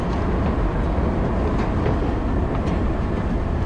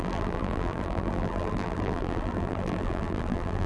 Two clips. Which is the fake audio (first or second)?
second